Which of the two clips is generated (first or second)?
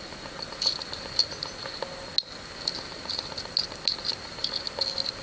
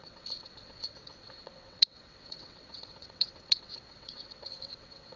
second